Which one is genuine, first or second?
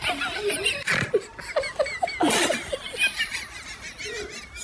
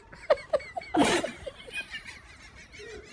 first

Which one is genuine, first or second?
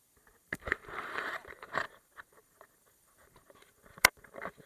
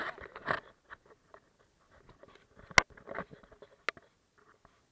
second